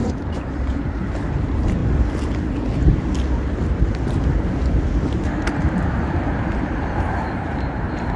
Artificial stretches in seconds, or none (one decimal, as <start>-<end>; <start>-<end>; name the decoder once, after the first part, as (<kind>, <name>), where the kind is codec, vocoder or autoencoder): 0.0-1.8 (vocoder, BigVGAN v2); 6.6-8.2